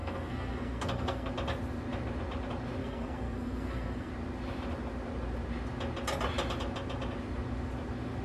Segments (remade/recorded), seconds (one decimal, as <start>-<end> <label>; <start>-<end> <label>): 0.0-1.3 remade; 1.3-2.8 recorded; 2.8-4.1 remade; 4.1-8.2 recorded

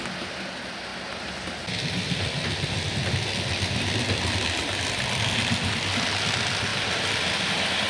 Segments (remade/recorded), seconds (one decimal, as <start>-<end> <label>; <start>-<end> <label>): 0.0-7.9 recorded

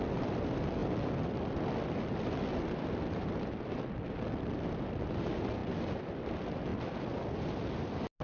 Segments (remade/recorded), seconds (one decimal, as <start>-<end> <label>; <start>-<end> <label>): 0.0-8.2 recorded

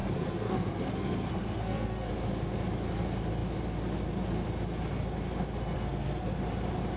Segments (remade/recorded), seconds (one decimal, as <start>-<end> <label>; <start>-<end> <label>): 0.0-2.1 remade; 2.1-5.6 recorded; 5.6-6.3 remade; 6.3-7.0 recorded

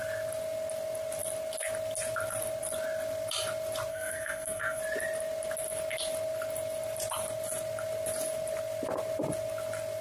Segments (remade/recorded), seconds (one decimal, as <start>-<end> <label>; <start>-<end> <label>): 0.0-3.9 recorded; 3.9-4.8 remade; 4.8-10.0 recorded

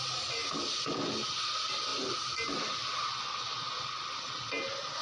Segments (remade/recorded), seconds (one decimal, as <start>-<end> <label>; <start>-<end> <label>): 0.0-5.0 recorded

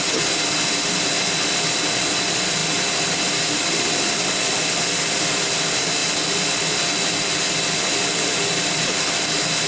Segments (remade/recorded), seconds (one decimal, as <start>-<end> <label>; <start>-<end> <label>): 0.0-9.7 recorded

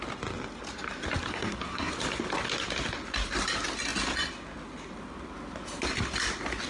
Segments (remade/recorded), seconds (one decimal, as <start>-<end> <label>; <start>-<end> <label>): 0.0-1.3 recorded; 1.3-1.9 remade; 1.9-6.7 recorded